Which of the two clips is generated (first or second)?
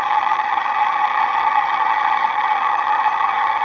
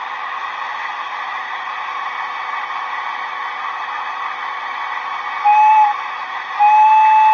first